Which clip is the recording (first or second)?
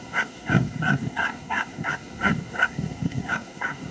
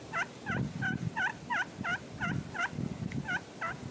second